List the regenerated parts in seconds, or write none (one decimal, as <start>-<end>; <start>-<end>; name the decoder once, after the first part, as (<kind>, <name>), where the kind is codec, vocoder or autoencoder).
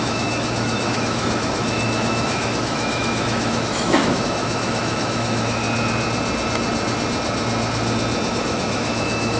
0.0-5.6 (autoencoder, DAC-VAE); 8.3-9.4